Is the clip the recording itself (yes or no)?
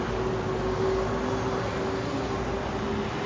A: yes